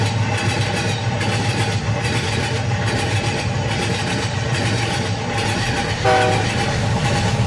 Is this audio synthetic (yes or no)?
no